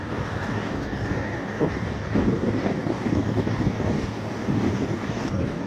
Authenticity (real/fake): fake